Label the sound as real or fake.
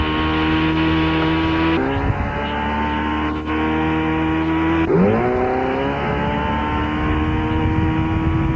real